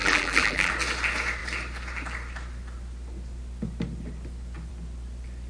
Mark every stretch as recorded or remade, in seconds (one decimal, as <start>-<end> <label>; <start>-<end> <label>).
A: 0.0-0.7 remade; 0.7-5.5 recorded